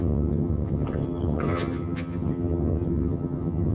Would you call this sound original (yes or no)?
no